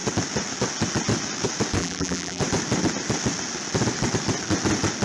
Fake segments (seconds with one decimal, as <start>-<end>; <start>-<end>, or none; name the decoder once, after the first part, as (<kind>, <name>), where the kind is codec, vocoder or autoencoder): 1.8-2.4 (vocoder, BigVGAN v2)